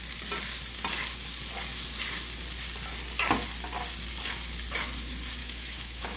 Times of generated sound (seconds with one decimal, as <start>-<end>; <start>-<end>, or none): 5.4-6.2